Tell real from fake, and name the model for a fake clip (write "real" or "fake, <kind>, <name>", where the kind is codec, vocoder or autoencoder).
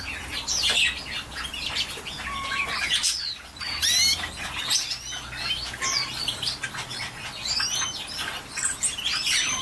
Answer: real